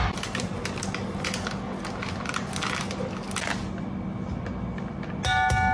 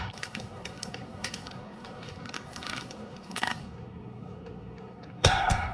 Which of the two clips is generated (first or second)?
second